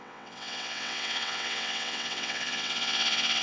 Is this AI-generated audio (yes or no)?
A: yes